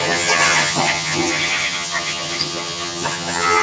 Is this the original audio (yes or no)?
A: no